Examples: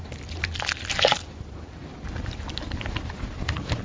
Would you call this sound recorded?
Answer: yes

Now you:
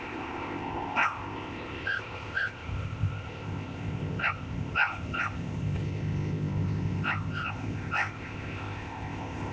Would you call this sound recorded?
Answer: no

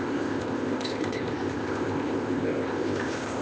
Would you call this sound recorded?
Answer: no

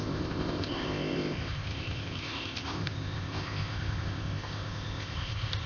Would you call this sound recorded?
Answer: no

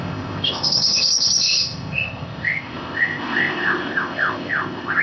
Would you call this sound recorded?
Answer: no